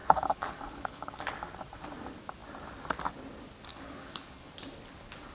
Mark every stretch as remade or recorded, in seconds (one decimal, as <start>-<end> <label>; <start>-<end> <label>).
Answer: 0.0-1.2 remade; 1.2-3.7 recorded; 3.7-4.5 remade; 4.5-5.3 recorded